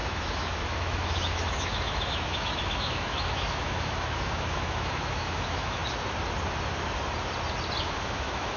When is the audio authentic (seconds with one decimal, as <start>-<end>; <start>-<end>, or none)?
5.8-7.8